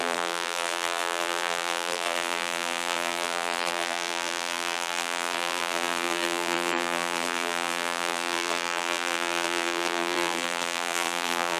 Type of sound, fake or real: fake